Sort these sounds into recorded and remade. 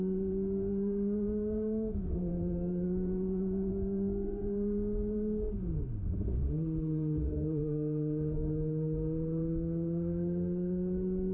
remade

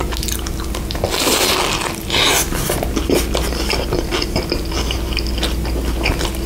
recorded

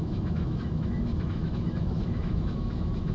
remade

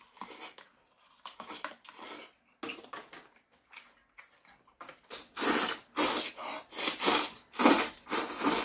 recorded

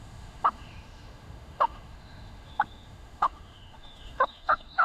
remade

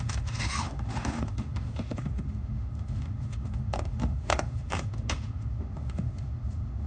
remade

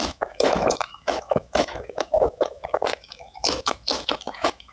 remade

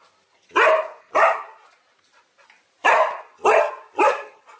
recorded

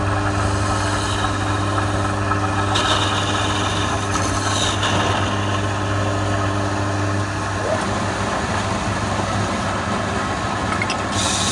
recorded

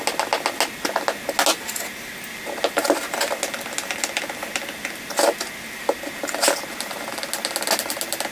recorded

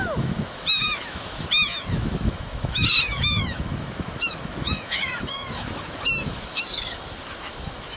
remade